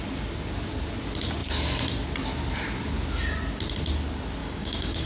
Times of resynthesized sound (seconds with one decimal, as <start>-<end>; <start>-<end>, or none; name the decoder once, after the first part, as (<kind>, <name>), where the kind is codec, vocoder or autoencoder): 4.4-5.1 (codec, DAC)